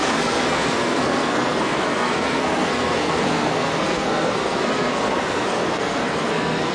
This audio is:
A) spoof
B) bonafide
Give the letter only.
A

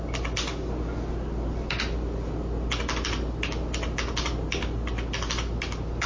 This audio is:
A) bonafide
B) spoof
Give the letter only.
A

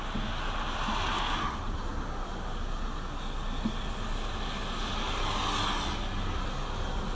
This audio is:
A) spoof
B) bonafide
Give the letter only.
B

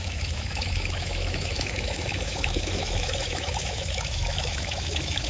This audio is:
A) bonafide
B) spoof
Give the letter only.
B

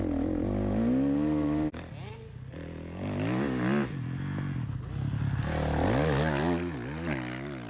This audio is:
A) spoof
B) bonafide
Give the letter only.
B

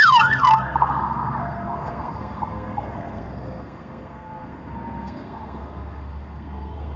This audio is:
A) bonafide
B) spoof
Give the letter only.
B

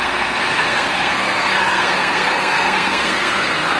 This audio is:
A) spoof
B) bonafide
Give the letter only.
A